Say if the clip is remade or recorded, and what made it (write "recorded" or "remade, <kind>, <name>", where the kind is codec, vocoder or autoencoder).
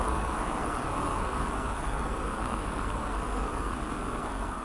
remade, codec, SNAC